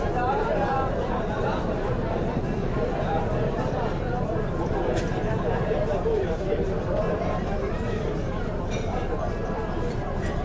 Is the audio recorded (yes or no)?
no